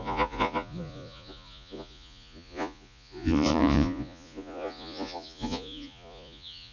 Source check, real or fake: fake